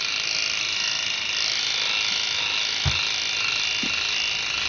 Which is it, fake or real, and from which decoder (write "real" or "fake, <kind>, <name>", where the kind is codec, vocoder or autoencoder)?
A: real